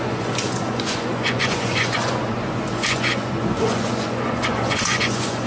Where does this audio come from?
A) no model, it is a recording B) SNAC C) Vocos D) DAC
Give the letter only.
C